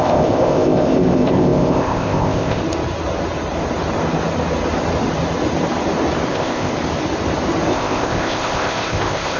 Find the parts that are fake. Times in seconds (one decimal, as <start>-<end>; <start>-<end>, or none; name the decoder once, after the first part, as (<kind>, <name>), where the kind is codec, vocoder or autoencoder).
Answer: 0.0-2.6 (codec, ZipCodec); 6.3-6.7; 7.7-9.4